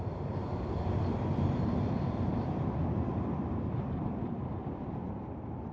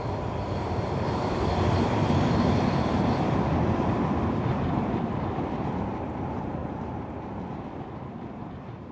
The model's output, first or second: second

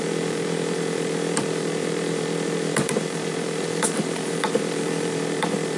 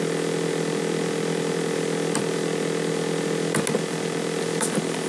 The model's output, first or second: first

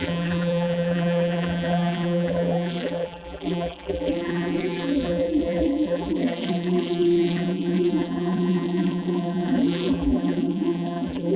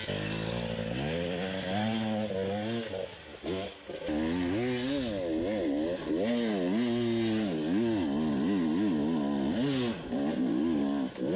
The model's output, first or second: first